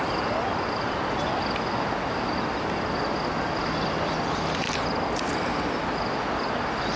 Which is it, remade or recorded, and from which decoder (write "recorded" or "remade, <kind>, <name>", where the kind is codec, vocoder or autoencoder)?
recorded